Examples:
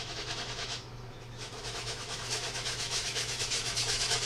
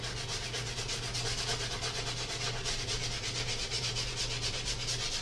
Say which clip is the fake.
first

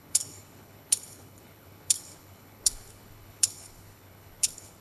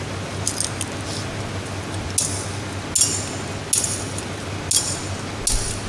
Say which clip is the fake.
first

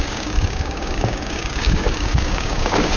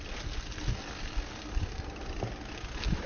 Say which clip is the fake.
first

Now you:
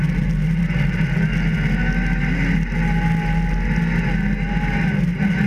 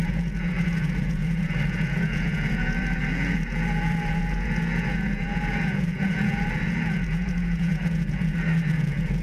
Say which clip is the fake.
second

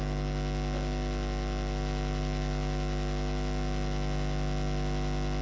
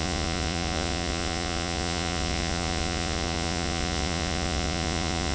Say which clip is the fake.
second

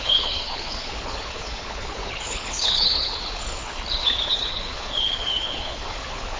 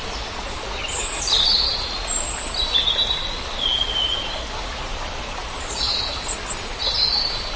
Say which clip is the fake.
first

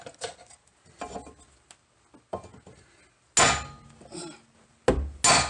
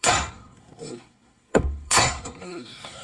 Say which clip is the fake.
second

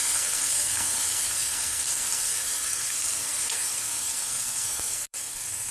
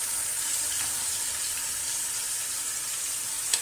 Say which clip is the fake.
first